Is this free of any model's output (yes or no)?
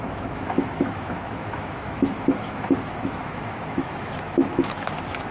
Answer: no